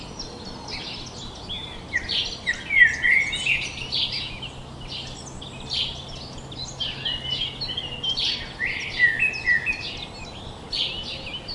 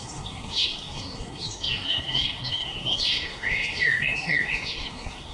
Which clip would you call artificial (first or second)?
second